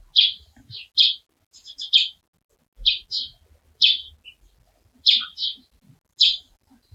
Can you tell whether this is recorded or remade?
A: recorded